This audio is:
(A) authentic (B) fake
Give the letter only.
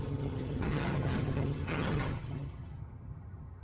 B